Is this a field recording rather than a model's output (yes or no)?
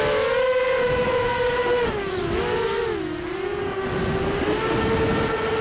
yes